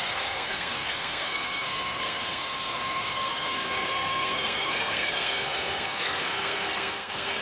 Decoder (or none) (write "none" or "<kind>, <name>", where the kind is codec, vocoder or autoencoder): codec, SNAC